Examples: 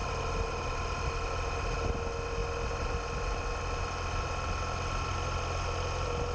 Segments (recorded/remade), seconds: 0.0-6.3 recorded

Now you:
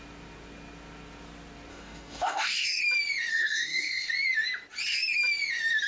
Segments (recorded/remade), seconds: 0.0-1.7 recorded; 1.7-2.8 remade; 2.8-3.3 recorded; 3.3-4.1 remade; 4.1-5.9 recorded

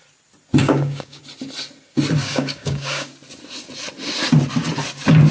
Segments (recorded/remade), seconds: 0.0-0.6 recorded; 0.6-1.2 remade; 1.2-2.2 recorded; 2.2-3.1 remade; 3.1-5.3 recorded

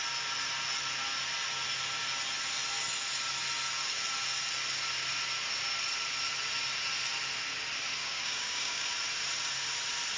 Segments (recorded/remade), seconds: 0.0-8.0 recorded; 8.0-8.9 remade; 8.9-10.2 recorded

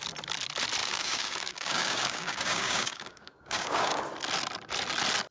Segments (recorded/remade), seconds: 0.0-0.8 recorded; 0.8-4.0 remade; 4.0-5.3 recorded

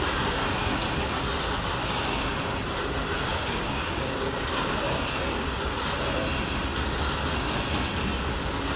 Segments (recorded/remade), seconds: 0.0-3.3 recorded; 3.3-4.5 remade; 4.5-8.8 recorded